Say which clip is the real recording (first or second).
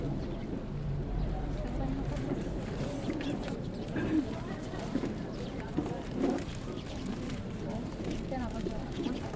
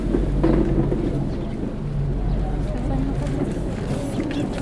second